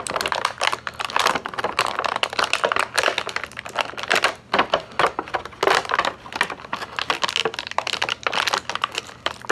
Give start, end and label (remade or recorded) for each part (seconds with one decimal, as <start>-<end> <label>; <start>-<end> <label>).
0.0-9.5 recorded